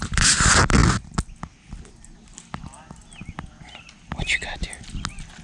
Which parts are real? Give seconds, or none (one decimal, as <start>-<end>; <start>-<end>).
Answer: 0.0-5.4